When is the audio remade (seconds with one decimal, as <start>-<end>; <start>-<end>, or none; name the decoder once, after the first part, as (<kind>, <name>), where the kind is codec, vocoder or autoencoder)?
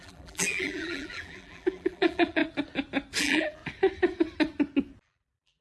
0.0-2.4 (vocoder, BigVGAN v2); 3.2-3.6; 5.0-5.6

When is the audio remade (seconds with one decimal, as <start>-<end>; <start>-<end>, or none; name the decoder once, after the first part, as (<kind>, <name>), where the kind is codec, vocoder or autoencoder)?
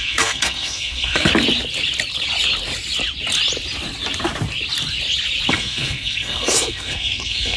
0.0-1.3 (codec, SNAC); 5.5-7.6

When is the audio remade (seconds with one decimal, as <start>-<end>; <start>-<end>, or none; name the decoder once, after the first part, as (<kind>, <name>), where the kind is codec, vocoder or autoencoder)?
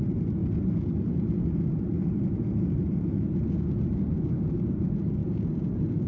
none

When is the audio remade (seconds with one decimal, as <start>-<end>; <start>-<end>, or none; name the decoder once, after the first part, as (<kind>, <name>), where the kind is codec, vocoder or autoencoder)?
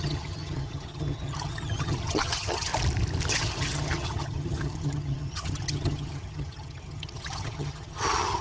0.0-2.7 (vocoder, HiFi-GAN); 3.3-8.4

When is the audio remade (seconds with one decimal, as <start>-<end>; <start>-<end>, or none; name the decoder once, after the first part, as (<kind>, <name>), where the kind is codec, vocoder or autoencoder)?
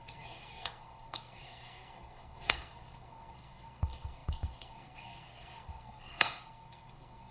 0.0-7.3 (codec, SNAC)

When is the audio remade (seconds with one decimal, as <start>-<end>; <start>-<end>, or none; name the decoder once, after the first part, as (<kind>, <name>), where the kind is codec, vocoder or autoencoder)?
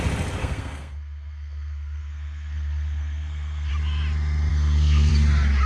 0.4-3.7 (codec, SNAC); 4.5-5.1